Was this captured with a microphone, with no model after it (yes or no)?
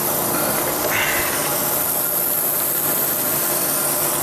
yes